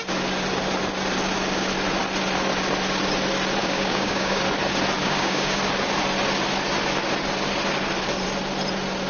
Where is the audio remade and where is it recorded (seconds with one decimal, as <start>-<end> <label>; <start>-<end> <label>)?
0.0-3.6 recorded; 3.6-4.4 remade; 4.4-5.0 recorded; 5.0-5.6 remade; 5.6-9.1 recorded